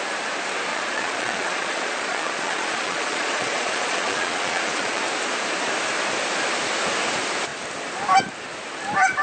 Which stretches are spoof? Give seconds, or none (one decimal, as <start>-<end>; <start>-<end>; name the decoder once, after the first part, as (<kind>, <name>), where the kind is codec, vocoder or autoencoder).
0.7-5.0 (vocoder, Vocos)